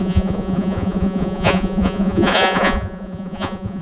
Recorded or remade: remade